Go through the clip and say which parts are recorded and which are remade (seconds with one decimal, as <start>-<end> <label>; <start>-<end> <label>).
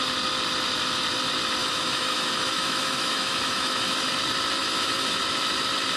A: 0.0-1.6 recorded; 1.6-4.1 remade; 4.1-4.6 recorded; 4.6-5.2 remade; 5.2-6.0 recorded